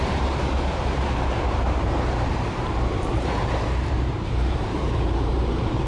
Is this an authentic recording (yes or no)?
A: no